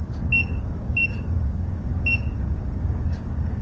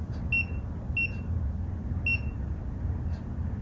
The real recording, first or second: second